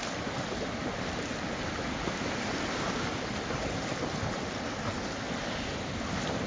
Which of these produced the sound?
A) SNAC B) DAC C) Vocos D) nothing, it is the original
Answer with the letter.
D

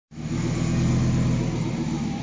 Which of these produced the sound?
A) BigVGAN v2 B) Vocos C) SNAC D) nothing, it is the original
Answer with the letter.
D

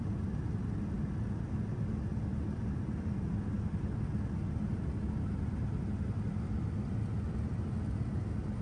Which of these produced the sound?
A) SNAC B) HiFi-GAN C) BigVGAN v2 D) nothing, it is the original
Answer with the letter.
D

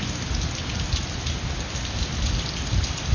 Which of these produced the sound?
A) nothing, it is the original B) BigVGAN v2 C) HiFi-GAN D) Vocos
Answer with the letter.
A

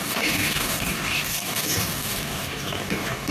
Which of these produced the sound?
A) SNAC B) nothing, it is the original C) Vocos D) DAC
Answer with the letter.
D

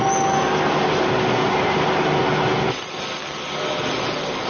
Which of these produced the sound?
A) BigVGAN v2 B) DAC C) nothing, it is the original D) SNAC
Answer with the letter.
C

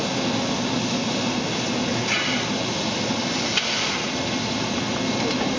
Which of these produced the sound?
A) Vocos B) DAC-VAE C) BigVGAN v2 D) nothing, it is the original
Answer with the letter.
D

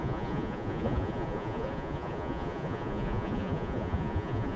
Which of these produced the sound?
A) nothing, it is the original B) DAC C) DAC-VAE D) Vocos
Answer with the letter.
D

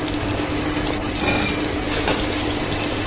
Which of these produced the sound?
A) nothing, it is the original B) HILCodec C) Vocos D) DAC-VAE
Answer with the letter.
A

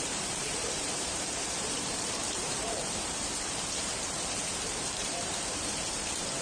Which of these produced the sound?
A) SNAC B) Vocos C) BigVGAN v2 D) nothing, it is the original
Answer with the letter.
C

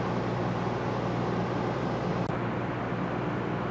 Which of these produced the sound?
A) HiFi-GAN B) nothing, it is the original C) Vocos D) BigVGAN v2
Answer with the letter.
B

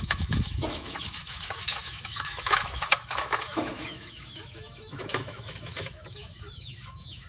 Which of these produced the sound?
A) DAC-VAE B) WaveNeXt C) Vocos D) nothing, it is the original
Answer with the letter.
A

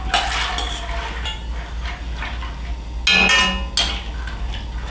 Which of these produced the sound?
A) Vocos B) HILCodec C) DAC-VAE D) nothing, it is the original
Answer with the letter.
D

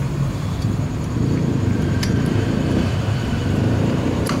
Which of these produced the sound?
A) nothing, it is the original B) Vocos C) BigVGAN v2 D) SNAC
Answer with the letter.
C